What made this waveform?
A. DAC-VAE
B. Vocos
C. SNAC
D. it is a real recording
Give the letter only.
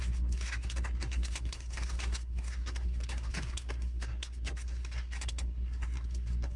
C